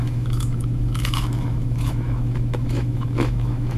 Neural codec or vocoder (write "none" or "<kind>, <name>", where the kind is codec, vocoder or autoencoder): autoencoder, DAC-VAE